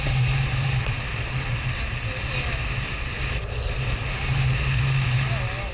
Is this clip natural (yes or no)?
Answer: yes